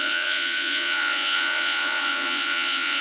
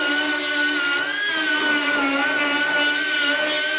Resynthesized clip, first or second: first